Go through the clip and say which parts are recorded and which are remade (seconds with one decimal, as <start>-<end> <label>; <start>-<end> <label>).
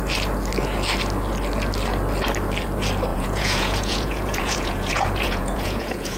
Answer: 0.0-3.1 recorded; 3.1-6.2 remade